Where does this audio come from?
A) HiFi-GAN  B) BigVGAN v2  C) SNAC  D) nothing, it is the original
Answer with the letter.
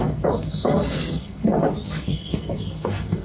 C